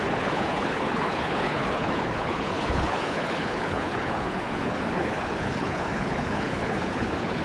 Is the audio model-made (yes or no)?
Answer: yes